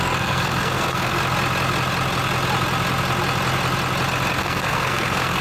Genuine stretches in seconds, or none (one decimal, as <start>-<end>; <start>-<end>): 1.2-4.4